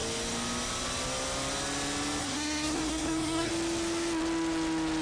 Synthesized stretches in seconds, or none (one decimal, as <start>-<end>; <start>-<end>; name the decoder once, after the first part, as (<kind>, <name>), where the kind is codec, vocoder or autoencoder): 2.2-3.5 (codec, SNAC)